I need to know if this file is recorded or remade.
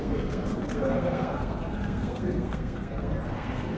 remade